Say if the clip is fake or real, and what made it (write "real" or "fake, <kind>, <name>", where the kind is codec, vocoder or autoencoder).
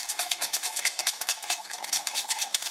fake, codec, DAC